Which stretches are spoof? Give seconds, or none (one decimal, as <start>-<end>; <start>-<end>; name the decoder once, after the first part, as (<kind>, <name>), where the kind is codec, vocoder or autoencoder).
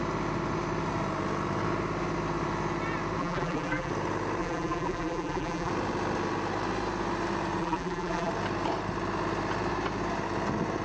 3.2-3.9 (vocoder, BigVGAN v2); 4.4-5.7; 7.6-8.3